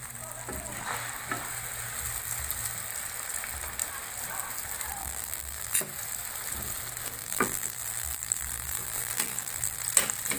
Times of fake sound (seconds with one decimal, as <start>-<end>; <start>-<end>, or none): 5.0-5.8; 7.2-9.8